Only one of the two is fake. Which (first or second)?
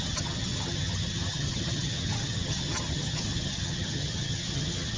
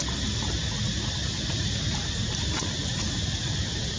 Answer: first